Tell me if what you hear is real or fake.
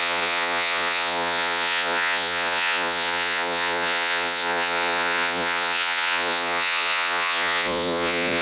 fake